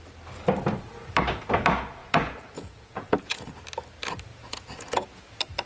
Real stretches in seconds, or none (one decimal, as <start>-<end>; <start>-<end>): 0.0-2.0; 3.6-4.3; 5.2-5.7